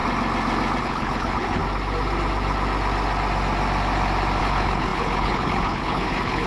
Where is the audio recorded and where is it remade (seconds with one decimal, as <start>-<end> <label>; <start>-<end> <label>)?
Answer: 0.0-0.8 recorded; 0.8-1.6 remade; 1.6-4.4 recorded; 4.4-6.5 remade